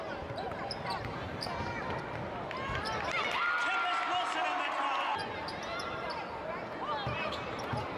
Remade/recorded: recorded